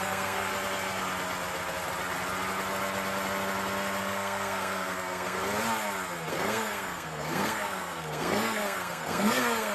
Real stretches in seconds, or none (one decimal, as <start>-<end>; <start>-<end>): 0.5-4.0; 5.4-6.3